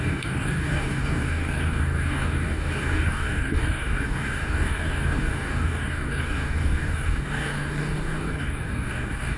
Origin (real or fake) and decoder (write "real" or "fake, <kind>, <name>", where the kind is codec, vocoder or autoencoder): fake, codec, DAC